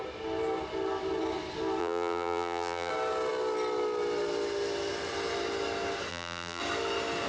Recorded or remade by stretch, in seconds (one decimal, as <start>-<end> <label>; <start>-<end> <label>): 0.0-1.8 recorded; 1.8-2.9 remade; 2.9-6.1 recorded; 6.1-6.6 remade; 6.6-7.3 recorded